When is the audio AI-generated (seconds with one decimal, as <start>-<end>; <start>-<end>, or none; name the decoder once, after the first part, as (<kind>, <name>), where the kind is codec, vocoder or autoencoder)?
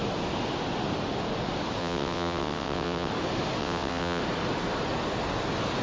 1.8-3.1 (vocoder, WaveNeXt); 3.6-4.2